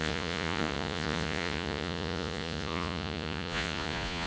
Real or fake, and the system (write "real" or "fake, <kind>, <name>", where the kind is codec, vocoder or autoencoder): fake, vocoder, Vocos